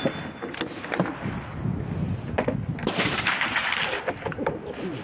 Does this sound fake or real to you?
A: real